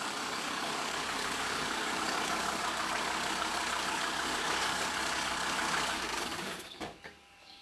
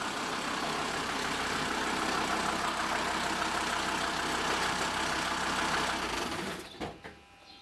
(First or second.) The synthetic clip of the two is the first